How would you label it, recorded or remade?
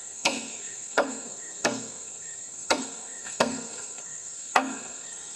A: remade